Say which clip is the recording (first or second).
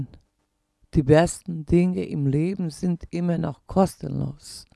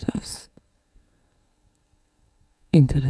first